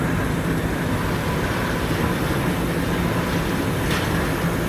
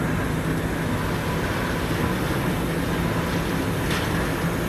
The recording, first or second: second